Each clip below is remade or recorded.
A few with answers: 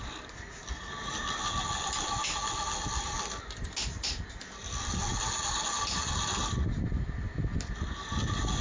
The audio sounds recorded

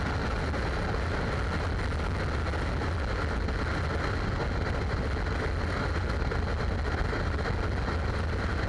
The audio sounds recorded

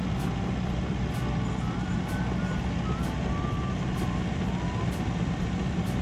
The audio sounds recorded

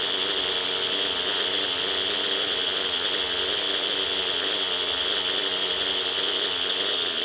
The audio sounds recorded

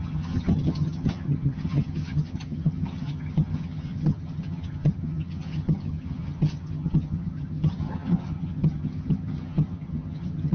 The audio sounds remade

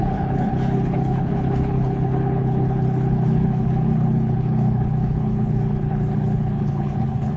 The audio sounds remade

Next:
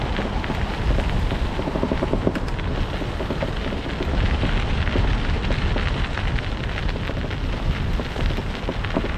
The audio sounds recorded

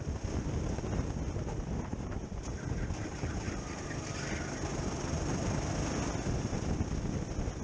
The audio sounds recorded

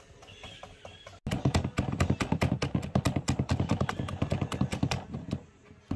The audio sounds recorded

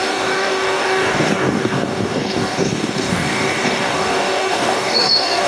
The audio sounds remade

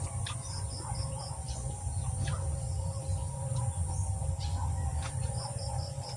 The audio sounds remade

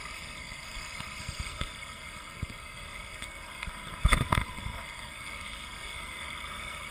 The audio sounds remade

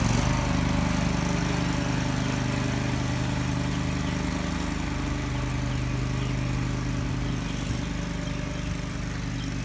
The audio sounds recorded